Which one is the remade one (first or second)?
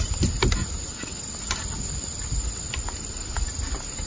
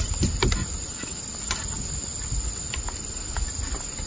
first